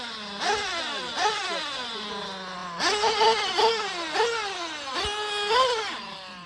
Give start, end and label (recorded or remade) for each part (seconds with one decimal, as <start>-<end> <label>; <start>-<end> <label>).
0.0-6.5 recorded